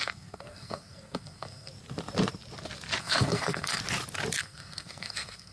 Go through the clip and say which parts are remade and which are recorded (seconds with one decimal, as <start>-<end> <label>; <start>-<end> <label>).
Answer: 0.0-1.7 remade; 1.7-3.0 recorded; 3.0-3.8 remade; 3.8-4.4 recorded; 4.4-5.5 remade